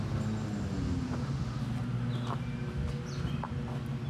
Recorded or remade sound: recorded